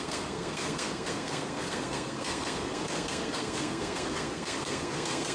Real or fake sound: fake